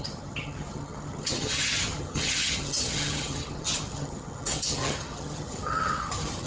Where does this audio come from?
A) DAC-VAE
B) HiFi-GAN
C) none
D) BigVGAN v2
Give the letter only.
B